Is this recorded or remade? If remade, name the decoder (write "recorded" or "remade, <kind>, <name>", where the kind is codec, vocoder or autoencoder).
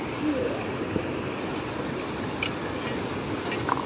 recorded